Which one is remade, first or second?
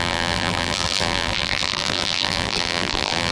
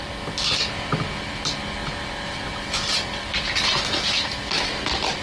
first